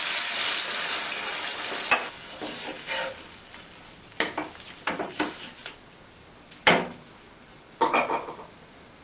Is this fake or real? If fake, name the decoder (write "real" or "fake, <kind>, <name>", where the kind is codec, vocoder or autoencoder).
real